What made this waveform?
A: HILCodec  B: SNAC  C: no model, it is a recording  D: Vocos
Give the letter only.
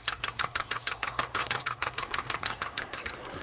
B